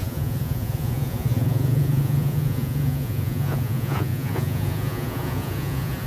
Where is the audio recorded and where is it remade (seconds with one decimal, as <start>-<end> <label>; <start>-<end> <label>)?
0.0-6.1 remade